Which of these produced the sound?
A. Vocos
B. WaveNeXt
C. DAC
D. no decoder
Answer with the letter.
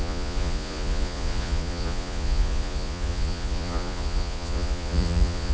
A